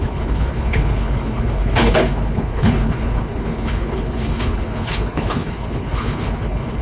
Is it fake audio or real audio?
fake